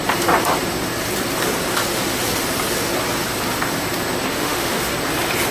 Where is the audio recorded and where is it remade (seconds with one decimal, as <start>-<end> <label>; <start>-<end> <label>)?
0.0-4.3 recorded; 4.3-4.9 remade; 4.9-5.5 recorded